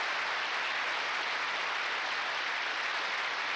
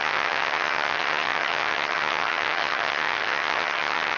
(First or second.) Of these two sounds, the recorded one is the first